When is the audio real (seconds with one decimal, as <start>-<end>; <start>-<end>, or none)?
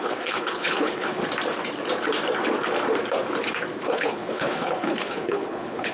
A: 1.2-3.8